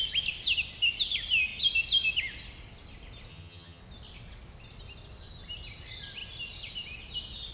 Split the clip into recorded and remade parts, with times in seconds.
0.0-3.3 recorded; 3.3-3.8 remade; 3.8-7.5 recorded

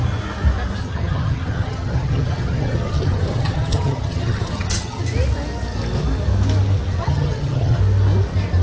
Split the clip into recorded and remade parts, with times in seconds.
0.0-0.8 recorded; 0.8-5.0 remade; 5.0-7.0 recorded; 7.0-7.8 remade; 7.8-8.6 recorded

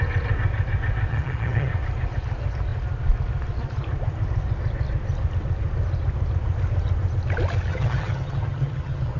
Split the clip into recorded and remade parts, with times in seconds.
0.0-1.1 recorded; 1.1-1.7 remade; 1.7-7.7 recorded; 7.7-9.2 remade